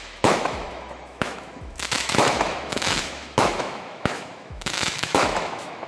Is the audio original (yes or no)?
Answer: no